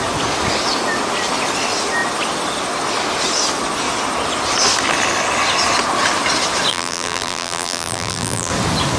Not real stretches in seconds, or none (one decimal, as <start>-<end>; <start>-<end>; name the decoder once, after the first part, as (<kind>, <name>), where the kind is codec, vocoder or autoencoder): 6.7-8.5 (vocoder, BigVGAN v2)

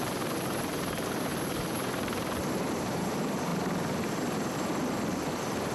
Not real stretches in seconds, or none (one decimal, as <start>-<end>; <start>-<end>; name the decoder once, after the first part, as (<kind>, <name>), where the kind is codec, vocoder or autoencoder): 0.0-3.5 (vocoder, BigVGAN v2); 5.3-5.7

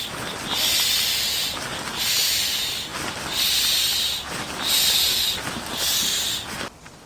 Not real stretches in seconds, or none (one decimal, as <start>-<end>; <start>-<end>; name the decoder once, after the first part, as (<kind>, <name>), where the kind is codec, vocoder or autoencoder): 1.3-2.0 (vocoder, BigVGAN v2)

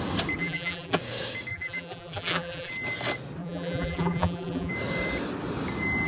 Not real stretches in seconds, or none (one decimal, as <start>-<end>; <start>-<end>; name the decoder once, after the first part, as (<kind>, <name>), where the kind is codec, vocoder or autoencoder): 0.4-1.0 (vocoder, BigVGAN v2); 1.5-2.7; 3.4-4.7

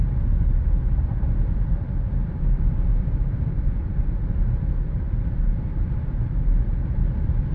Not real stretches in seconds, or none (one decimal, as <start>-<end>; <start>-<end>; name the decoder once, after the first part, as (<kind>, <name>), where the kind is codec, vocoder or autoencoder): 2.2-4.7 (vocoder, BigVGAN v2)

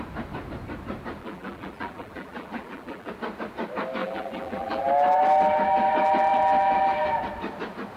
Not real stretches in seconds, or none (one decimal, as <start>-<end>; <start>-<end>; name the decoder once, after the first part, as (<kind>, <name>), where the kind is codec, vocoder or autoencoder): 1.2-3.1 (vocoder, BigVGAN v2); 4.0-4.9